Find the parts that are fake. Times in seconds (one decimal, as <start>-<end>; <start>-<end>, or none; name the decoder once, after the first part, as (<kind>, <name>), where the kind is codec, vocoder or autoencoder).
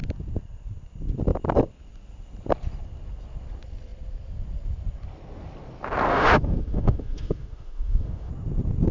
6.1-8.3 (autoencoder, DAC-VAE)